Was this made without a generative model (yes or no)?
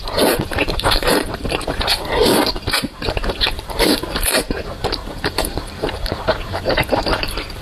no